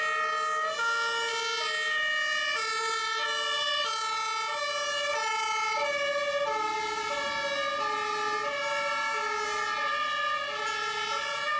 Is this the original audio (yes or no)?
yes